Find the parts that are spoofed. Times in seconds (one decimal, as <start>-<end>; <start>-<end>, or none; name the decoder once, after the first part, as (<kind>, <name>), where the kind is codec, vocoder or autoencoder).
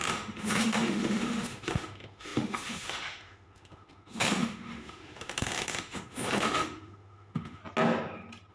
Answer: 0.0-7.6 (autoencoder, DAC-VAE)